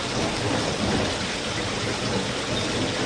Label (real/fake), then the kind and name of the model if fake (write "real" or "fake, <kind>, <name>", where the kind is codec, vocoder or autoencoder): real